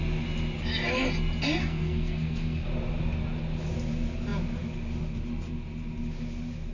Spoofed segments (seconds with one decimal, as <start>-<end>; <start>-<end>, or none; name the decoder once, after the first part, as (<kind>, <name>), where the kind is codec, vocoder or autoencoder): 1.6-2.7 (codec, SNAC)